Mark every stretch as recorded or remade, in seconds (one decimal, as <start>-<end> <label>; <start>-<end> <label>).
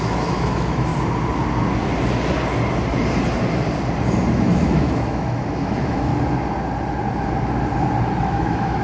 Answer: 0.0-0.9 remade; 0.9-4.3 recorded; 4.3-6.1 remade; 6.1-8.2 recorded; 8.2-8.8 remade